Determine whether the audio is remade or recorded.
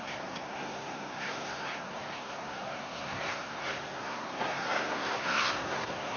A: remade